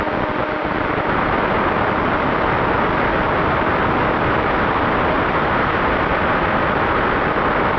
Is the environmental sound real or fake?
real